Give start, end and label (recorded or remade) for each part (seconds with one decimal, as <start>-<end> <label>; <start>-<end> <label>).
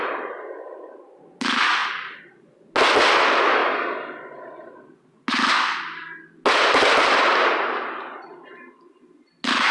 0.0-9.7 recorded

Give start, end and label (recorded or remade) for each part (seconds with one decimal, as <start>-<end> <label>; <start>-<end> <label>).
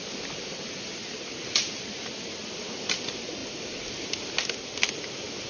0.0-5.5 recorded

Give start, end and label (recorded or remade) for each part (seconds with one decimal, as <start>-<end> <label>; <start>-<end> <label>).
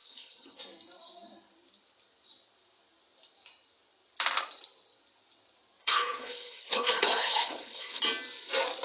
0.0-0.6 remade; 0.6-5.8 recorded; 5.8-8.0 remade; 8.0-8.8 recorded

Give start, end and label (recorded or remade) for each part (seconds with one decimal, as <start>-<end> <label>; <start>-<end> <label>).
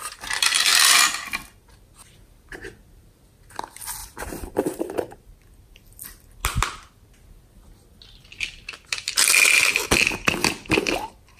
0.0-4.0 recorded; 4.0-5.3 remade; 5.3-11.4 recorded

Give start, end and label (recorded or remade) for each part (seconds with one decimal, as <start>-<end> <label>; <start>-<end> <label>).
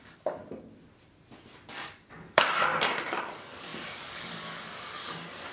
0.0-0.4 remade; 0.4-1.7 recorded; 1.7-2.7 remade; 2.7-3.2 recorded; 3.2-5.5 remade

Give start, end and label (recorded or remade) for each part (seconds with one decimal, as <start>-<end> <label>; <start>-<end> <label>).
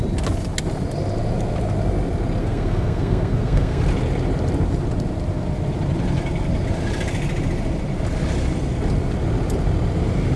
0.0-2.4 recorded; 2.4-3.8 remade; 3.8-10.4 recorded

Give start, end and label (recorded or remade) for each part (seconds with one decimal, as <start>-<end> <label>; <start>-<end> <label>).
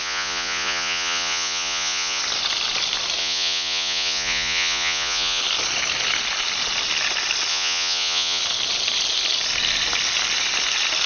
0.0-2.2 remade; 2.2-3.2 recorded; 3.2-5.4 remade; 5.4-7.5 recorded; 7.5-8.4 remade; 8.4-11.1 recorded